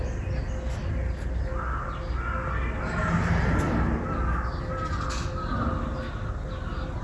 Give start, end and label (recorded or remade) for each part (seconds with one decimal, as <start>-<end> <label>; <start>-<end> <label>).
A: 0.0-7.0 recorded

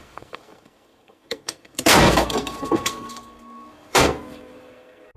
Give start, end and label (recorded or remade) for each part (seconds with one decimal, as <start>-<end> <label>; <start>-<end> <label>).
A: 0.0-5.2 remade

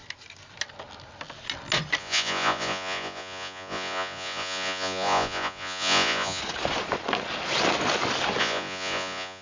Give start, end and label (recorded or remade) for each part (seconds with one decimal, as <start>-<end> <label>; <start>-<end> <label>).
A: 0.0-2.0 recorded; 2.0-6.4 remade; 6.4-8.4 recorded; 8.4-9.4 remade

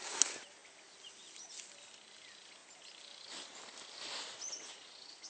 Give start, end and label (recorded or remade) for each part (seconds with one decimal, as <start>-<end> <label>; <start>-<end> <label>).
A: 0.0-5.3 recorded

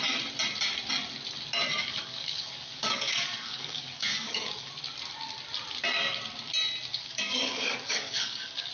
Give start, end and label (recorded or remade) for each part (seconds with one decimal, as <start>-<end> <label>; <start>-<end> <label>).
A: 0.0-1.8 recorded; 1.8-4.7 remade; 4.7-6.9 recorded; 6.9-8.7 remade

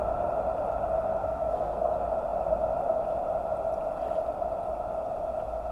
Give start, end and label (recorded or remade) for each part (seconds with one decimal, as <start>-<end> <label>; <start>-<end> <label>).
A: 0.0-1.2 recorded; 1.2-1.9 remade; 1.9-5.7 recorded

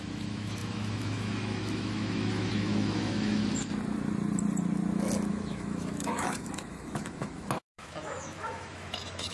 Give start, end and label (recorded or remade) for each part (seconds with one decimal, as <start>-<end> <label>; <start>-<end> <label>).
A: 0.0-3.4 remade; 3.4-5.3 recorded; 5.3-9.3 remade